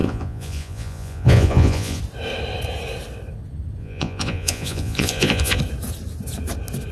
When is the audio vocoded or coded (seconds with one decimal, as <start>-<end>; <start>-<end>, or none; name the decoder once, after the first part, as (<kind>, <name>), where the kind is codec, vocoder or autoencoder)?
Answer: 0.0-2.0 (vocoder, Vocos); 3.8-5.6